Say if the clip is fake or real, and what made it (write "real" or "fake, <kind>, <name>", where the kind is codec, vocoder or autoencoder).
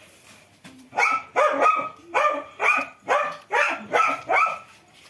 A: real